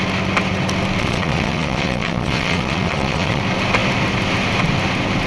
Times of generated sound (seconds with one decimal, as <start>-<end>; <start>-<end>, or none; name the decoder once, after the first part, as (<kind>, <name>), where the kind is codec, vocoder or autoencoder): 1.0-3.4 (vocoder, Vocos)